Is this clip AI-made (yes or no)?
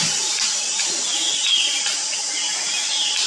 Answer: no